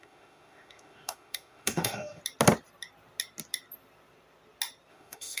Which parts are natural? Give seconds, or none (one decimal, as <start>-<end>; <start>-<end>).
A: 2.2-4.9